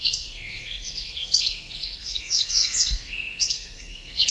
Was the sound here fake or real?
fake